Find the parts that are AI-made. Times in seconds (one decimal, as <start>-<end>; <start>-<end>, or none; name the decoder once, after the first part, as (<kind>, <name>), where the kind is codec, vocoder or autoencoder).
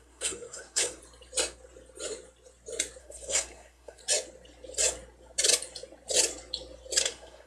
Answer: 0.0-1.0 (codec, SNAC); 3.0-4.0; 7.0-7.5